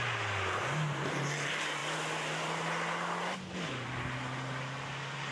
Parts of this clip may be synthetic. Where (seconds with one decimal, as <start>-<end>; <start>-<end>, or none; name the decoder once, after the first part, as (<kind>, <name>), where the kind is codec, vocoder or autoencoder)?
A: none